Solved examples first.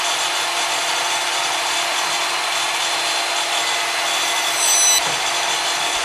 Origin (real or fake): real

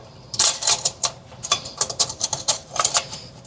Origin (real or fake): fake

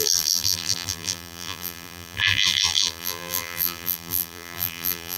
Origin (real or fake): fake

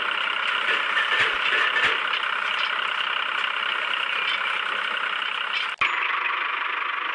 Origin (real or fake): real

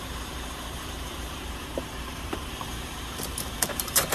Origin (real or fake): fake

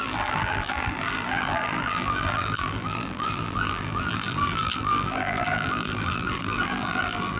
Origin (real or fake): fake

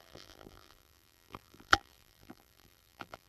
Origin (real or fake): fake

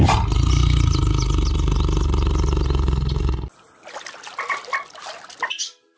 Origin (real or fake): real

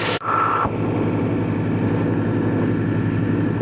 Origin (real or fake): real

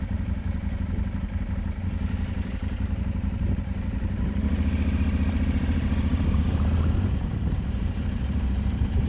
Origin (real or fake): fake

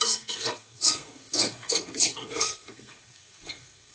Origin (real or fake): fake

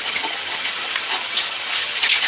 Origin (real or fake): fake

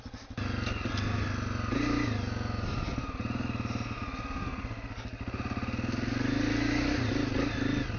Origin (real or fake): real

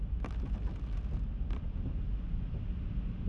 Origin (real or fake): real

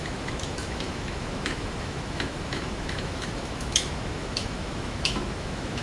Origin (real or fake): fake